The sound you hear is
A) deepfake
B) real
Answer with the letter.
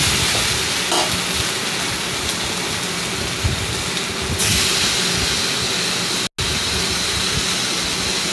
B